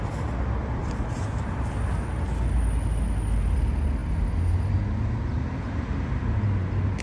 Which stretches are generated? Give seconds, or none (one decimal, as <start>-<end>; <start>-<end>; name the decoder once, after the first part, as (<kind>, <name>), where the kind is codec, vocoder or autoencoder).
0.8-1.4 (vocoder, BigVGAN v2)